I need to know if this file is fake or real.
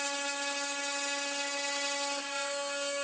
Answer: real